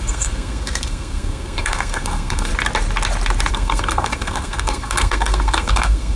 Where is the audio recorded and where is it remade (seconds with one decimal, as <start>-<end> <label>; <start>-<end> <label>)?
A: 0.0-2.5 remade; 2.5-3.5 recorded; 3.5-6.2 remade